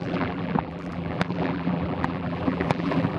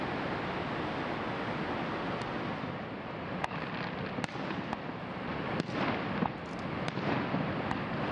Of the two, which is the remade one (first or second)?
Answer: first